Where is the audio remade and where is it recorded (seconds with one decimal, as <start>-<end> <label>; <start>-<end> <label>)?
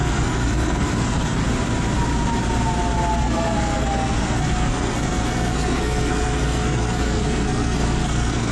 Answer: 0.0-1.4 remade; 1.4-3.2 recorded; 3.2-8.5 remade